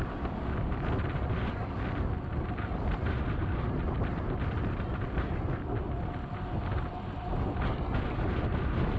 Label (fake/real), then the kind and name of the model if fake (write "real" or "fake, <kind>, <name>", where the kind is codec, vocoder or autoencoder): real